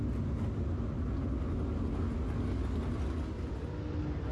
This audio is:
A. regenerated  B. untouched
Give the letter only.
B